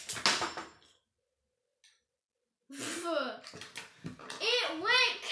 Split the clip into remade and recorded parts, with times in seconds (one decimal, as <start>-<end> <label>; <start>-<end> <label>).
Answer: 0.0-5.3 recorded